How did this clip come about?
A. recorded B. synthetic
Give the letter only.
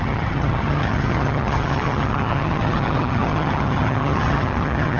B